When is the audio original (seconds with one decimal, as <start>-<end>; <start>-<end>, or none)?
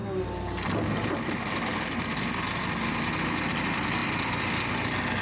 0.0-5.2